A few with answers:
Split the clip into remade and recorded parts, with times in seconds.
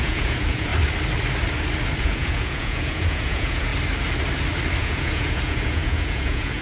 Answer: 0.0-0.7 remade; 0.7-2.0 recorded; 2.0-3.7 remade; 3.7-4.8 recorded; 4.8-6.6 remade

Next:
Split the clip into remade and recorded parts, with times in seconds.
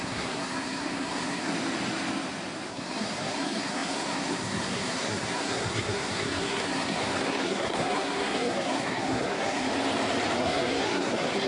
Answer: 0.0-1.5 remade; 1.5-2.7 recorded; 2.7-9.7 remade; 9.7-10.4 recorded; 10.4-11.5 remade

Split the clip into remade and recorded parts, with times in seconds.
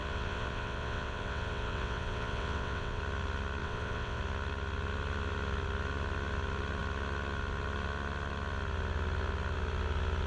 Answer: 0.0-3.0 remade; 3.0-3.6 recorded; 3.6-4.2 remade; 4.2-10.3 recorded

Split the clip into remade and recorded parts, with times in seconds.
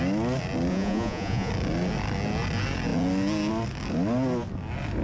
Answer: 0.0-0.7 recorded; 0.7-1.5 remade; 1.5-5.0 recorded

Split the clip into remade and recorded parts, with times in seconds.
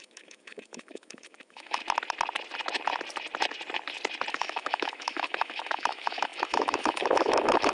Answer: 0.0-1.8 remade; 1.8-4.3 recorded; 4.3-7.7 remade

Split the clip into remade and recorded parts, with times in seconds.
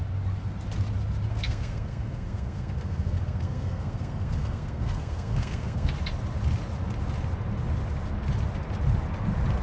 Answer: 0.0-1.3 recorded; 1.3-5.9 remade; 5.9-9.6 recorded